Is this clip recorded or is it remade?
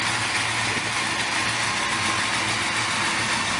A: recorded